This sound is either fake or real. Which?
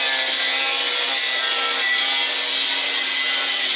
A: real